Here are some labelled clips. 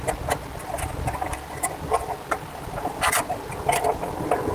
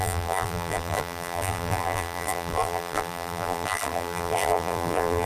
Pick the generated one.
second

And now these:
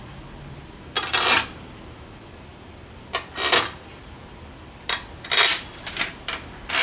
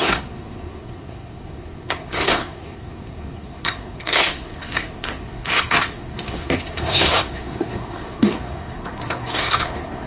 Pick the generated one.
second